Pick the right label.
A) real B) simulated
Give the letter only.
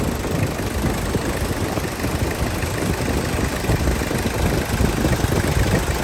A